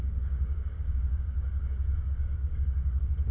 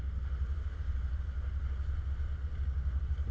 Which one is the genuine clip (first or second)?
second